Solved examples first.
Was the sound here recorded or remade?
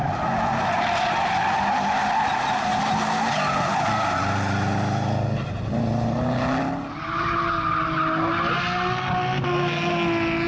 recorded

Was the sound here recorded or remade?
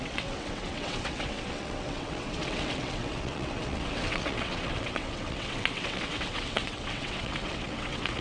remade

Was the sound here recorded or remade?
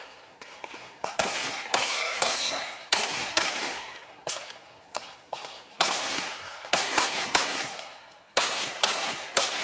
remade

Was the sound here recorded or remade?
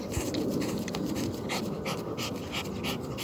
recorded